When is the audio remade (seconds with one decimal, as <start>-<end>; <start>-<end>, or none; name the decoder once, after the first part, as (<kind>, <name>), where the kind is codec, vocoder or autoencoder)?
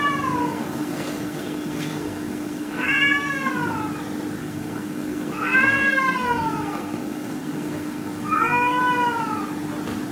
0.4-3.5 (codec, SNAC); 4.4-8.8